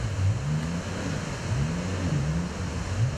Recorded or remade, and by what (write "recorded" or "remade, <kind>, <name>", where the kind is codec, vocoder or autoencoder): recorded